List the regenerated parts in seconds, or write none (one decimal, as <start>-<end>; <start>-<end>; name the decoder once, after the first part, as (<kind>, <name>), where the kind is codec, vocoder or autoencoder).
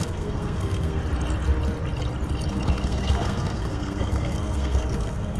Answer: 0.0-1.0 (codec, SNAC); 2.5-5.4